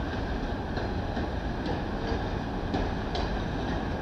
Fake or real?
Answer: real